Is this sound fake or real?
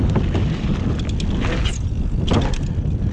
real